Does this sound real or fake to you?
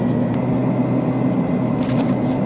real